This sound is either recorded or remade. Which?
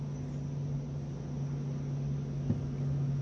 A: recorded